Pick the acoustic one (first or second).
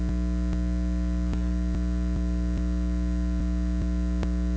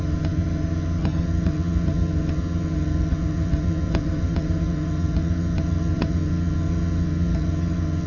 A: first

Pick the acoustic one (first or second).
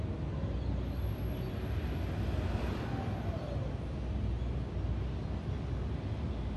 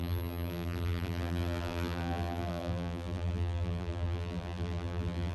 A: first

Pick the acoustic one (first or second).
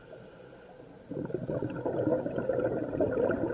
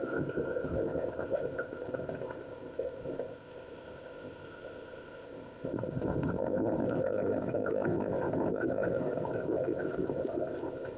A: first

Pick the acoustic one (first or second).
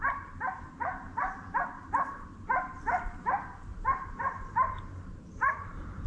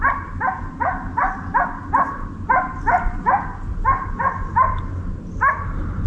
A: second